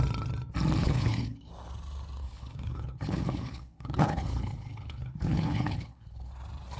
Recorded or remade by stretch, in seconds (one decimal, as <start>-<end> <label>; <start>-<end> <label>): 0.0-0.8 recorded; 0.8-1.5 remade; 1.5-2.2 recorded; 2.2-6.3 remade; 6.3-6.8 recorded